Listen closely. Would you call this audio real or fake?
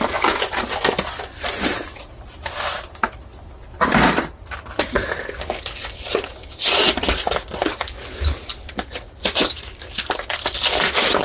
real